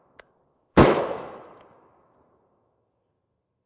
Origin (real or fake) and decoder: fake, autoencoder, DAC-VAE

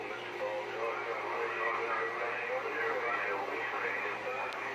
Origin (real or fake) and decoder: real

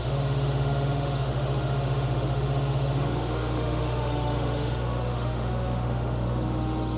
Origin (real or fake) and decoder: fake, autoencoder, DAC-VAE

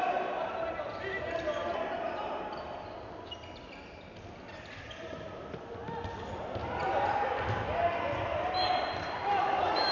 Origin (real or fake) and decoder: real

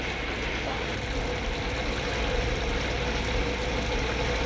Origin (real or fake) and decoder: real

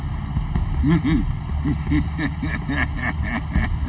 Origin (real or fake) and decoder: real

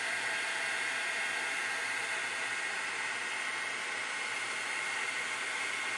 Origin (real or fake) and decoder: real